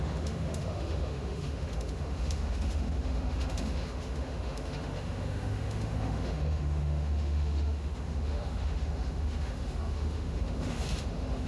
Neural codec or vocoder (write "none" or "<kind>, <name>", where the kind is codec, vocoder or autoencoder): autoencoder, DAC-VAE